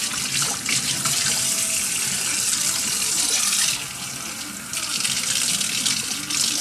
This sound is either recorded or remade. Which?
recorded